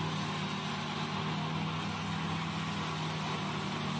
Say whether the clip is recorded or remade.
recorded